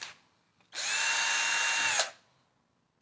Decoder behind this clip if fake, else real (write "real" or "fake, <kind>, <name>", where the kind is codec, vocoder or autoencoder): real